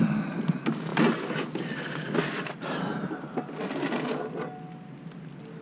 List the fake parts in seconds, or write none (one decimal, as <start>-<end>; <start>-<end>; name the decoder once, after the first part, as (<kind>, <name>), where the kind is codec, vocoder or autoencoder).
none

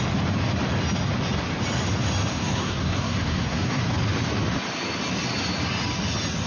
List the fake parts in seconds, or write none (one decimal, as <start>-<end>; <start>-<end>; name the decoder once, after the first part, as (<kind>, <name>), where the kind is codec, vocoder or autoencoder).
2.3-3.8 (codec, SNAC)

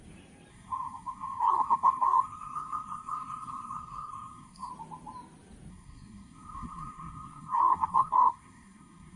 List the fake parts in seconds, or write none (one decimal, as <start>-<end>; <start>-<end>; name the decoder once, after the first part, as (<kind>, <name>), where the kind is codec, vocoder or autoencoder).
0.5-4.7 (codec, SNAC); 5.7-9.2

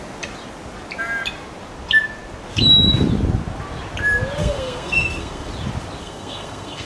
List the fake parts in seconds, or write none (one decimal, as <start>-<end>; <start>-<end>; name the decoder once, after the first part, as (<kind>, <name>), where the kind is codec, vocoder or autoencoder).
4.4-5.5 (codec, SNAC); 6.0-6.9

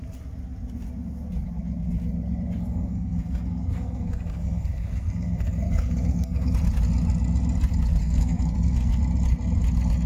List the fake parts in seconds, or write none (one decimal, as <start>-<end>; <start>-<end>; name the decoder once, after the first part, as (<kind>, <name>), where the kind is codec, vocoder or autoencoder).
2.7-6.5 (codec, SNAC); 8.0-9.0

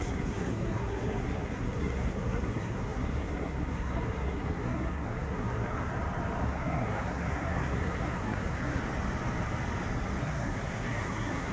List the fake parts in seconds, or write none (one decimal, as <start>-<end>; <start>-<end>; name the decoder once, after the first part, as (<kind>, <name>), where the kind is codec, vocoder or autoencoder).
0.0-5.9 (codec, SNAC); 6.4-8.8; 10.2-11.5